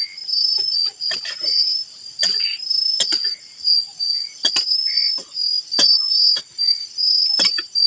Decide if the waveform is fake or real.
real